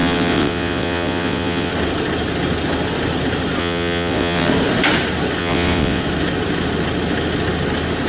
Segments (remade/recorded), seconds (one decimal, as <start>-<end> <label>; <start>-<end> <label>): 0.0-1.7 remade; 1.7-3.6 recorded; 3.6-4.5 remade; 4.5-5.4 recorded; 5.4-6.0 remade; 6.0-8.1 recorded